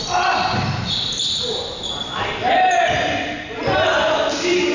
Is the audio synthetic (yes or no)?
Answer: no